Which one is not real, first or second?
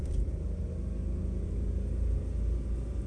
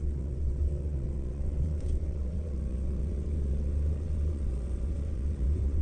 second